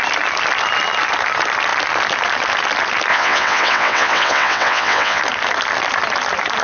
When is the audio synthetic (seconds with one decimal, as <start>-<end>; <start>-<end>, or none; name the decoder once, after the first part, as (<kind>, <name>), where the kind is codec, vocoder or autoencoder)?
3.1-5.2 (vocoder, WaveNeXt)

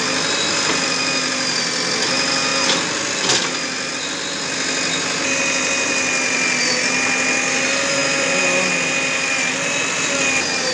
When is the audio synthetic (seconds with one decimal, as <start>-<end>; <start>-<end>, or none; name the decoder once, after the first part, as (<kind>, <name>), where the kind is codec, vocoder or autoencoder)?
none